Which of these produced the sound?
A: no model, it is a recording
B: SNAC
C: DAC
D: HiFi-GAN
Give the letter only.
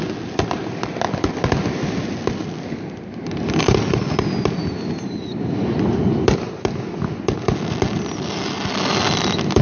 A